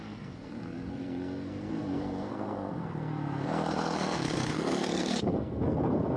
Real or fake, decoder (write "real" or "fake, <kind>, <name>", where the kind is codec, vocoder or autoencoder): fake, codec, SNAC